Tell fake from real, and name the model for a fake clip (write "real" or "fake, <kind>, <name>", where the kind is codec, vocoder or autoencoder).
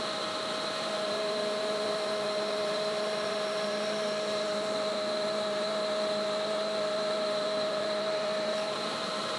fake, vocoder, BigVGAN v2